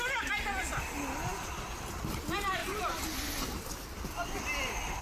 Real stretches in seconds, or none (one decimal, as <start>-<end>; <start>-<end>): 0.0-5.0